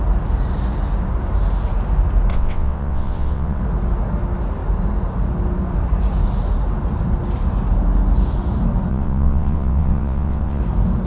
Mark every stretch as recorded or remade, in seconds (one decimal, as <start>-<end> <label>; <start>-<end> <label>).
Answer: 0.0-2.3 recorded; 2.3-3.6 remade; 3.6-8.9 recorded; 8.9-10.6 remade; 10.6-11.1 recorded